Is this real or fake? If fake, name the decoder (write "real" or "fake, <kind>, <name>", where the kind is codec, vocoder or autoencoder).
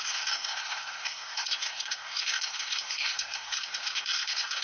fake, codec, SNAC